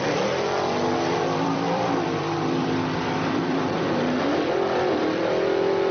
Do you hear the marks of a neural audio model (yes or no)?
yes